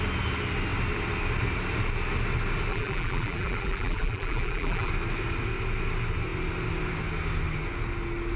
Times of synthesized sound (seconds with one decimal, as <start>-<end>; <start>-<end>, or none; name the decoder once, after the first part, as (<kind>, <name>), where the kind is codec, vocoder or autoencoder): 2.7-4.9 (vocoder, BigVGAN v2)